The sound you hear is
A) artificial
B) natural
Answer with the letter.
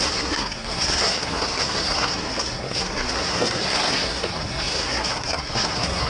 A